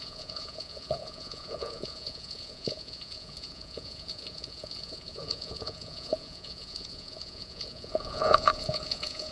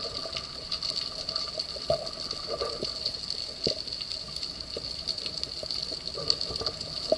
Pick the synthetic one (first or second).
first